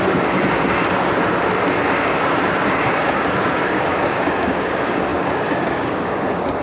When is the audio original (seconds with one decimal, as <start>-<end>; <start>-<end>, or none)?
0.0-3.7